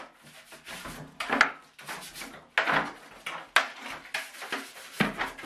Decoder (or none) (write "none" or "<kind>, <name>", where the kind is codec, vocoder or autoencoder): none